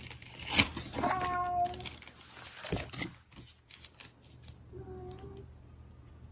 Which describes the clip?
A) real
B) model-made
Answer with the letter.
A